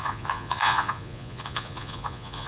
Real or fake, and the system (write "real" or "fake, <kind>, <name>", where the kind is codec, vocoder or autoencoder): fake, vocoder, Vocos